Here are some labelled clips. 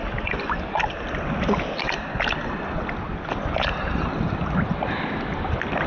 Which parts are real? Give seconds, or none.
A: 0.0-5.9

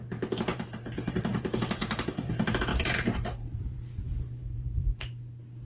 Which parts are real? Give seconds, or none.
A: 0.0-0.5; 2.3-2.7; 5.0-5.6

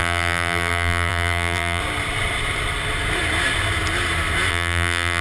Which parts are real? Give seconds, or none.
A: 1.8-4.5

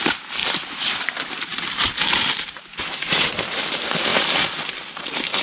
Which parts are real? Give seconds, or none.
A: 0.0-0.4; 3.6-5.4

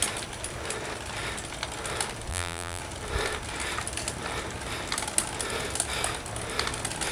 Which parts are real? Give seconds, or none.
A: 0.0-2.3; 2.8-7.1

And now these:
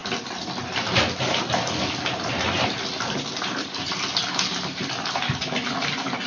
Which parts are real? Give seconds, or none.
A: 1.5-6.3